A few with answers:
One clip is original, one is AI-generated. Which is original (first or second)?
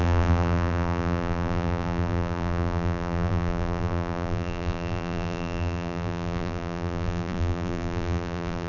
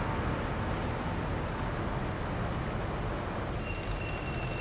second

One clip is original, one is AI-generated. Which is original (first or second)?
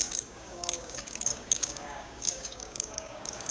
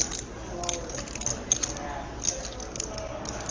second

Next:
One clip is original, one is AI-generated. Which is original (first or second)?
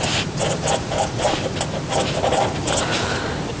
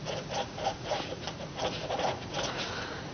first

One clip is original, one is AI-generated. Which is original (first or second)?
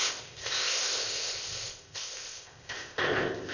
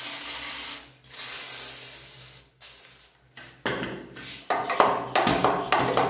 second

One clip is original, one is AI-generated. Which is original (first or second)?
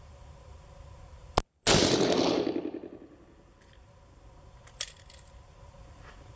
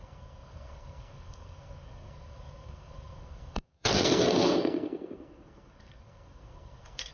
first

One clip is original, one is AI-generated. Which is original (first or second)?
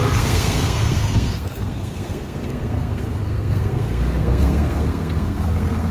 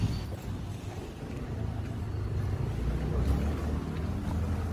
second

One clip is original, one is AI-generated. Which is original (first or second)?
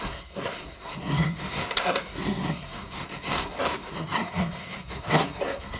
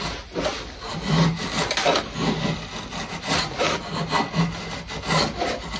second